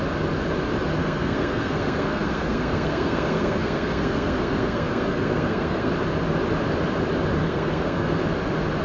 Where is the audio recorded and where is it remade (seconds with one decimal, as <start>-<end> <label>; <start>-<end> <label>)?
0.0-1.0 recorded; 1.0-5.9 remade; 5.9-7.4 recorded; 7.4-8.2 remade; 8.2-8.8 recorded